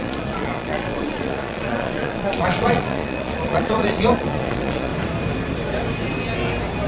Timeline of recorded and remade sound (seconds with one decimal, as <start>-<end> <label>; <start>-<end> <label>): 0.0-4.9 remade; 4.9-6.9 recorded